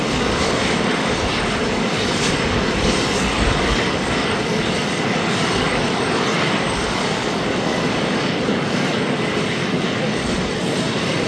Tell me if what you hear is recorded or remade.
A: remade